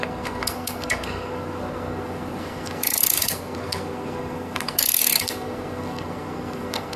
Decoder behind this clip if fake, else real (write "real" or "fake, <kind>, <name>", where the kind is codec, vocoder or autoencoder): fake, codec, SNAC